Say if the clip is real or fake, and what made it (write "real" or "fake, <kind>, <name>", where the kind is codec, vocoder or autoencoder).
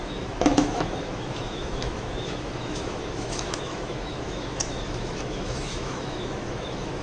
fake, autoencoder, DAC-VAE